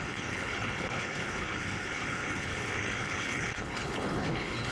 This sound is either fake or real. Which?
fake